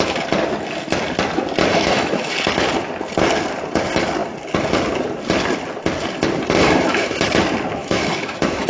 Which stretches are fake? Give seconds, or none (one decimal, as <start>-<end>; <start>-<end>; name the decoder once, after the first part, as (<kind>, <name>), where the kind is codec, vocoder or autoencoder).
1.7-2.3 (autoencoder, DAC-VAE); 6.6-7.2; 7.8-8.7